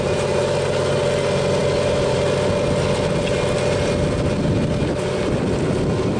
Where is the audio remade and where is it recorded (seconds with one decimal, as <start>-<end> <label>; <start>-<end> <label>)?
0.0-6.2 recorded